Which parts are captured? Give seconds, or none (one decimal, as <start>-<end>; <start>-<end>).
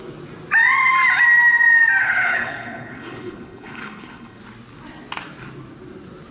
0.0-2.0; 4.4-6.3